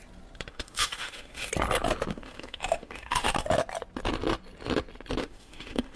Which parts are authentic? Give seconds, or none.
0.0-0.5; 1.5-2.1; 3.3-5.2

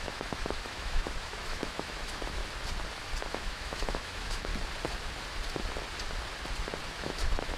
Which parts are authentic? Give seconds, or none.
2.4-3.2; 4.5-6.9

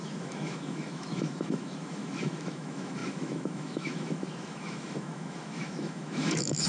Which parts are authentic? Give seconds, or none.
none

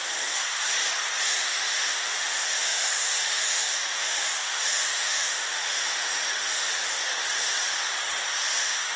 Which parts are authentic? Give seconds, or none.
0.0-1.2; 7.0-8.5

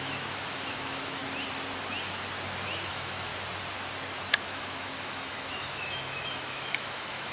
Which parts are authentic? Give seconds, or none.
1.2-2.9; 3.3-4.3

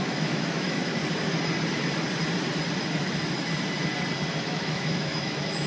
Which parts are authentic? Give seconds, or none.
1.0-4.4

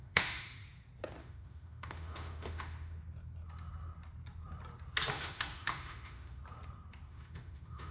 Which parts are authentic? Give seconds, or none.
0.6-1.2; 3.0-5.1; 6.4-7.1

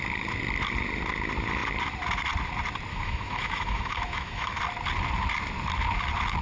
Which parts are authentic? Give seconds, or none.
0.0-2.9; 4.6-6.4